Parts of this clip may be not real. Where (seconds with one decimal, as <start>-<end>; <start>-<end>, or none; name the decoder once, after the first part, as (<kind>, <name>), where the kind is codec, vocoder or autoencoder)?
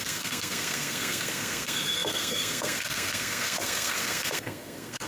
0.0-5.1 (codec, SNAC)